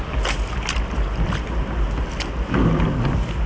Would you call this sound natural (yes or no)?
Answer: yes